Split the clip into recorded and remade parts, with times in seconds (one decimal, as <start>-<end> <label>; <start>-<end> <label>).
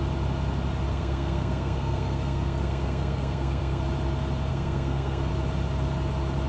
0.0-0.9 recorded; 0.9-3.8 remade; 3.8-4.5 recorded; 4.5-5.3 remade; 5.3-6.5 recorded